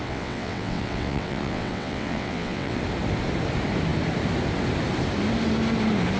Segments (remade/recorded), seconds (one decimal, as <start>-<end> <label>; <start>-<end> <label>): 0.0-2.8 remade; 2.8-6.2 recorded